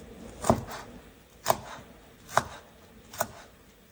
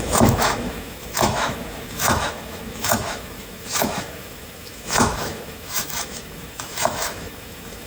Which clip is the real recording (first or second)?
first